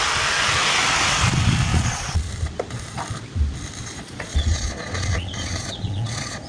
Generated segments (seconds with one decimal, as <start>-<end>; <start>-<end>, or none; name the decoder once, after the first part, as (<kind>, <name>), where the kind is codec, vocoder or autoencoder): 1.7-2.3 (vocoder, Vocos); 3.8-6.5